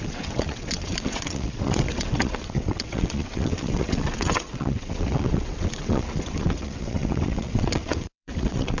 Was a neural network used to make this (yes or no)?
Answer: yes